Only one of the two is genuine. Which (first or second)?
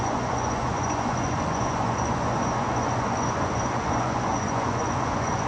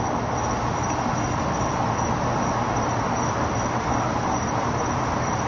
second